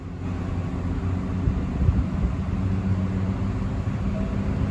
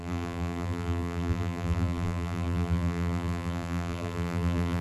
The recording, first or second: first